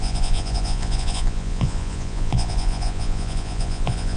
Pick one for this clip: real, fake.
fake